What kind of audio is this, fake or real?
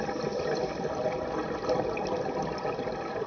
real